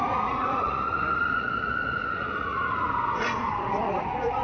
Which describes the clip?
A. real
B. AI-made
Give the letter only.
B